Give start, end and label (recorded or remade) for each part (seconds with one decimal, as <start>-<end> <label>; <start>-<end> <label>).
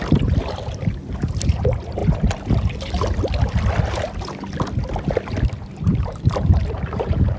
0.0-5.9 recorded; 5.9-7.4 remade